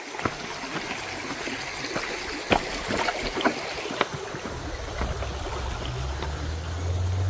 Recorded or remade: recorded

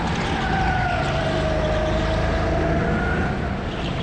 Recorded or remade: recorded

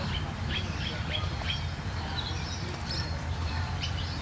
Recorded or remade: remade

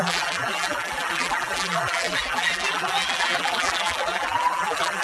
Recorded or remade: remade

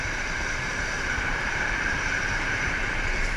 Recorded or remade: remade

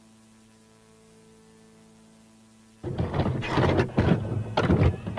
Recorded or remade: recorded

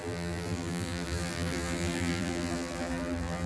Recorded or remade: remade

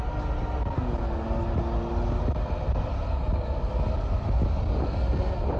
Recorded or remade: recorded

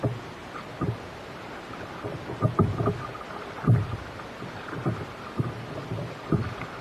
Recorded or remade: recorded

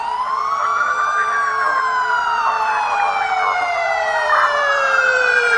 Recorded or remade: remade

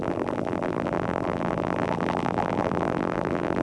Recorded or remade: remade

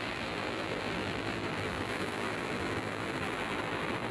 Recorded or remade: remade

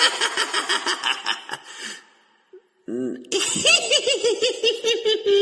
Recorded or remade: recorded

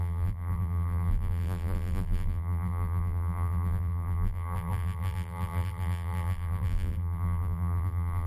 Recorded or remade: remade